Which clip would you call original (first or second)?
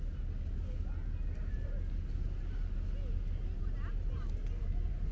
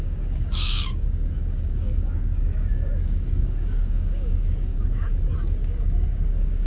first